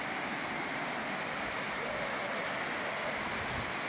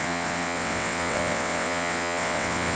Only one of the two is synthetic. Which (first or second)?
second